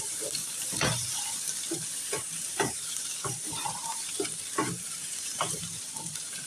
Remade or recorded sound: remade